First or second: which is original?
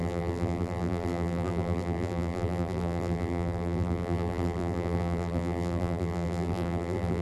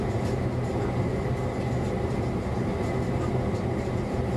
second